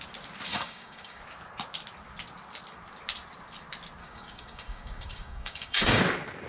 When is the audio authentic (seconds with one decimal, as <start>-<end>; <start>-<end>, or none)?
0.0-0.5; 1.2-4.0; 6.0-6.5